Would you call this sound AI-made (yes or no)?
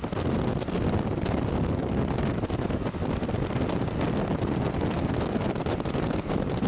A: no